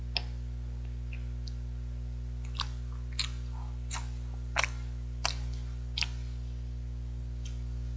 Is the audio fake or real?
real